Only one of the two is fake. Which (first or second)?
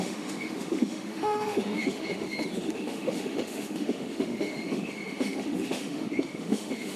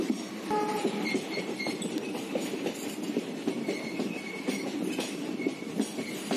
first